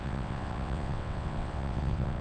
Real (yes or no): no